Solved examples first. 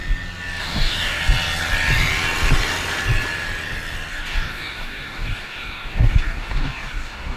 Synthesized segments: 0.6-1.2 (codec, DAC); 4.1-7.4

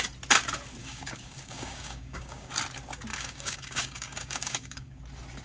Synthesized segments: 0.8-2.5 (codec, DAC); 3.1-5.0

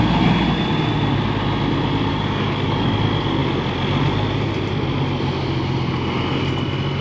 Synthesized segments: 2.1-2.9 (codec, DAC)

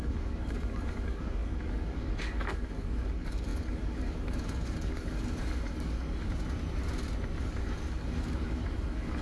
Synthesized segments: 0.0-6.3 (codec, DAC); 7.4-9.2